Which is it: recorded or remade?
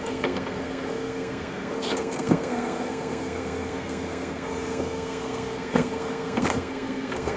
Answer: remade